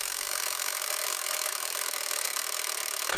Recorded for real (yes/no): no